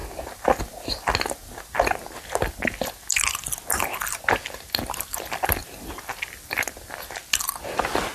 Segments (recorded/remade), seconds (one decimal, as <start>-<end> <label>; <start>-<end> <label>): 0.0-8.1 recorded